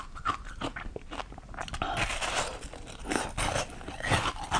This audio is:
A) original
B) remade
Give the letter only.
A